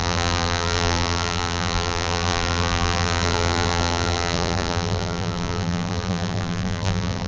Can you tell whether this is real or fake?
fake